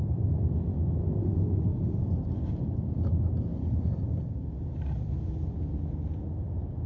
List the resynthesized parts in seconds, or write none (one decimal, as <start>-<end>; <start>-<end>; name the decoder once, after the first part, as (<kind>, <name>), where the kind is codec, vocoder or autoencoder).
1.2-2.0 (autoencoder, DAC-VAE)